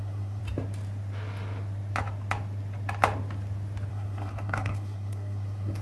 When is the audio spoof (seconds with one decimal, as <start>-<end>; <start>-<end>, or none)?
0.0-0.4; 3.9-5.8